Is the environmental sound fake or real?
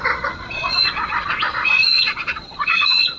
fake